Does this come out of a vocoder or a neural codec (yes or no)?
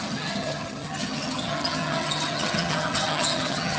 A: yes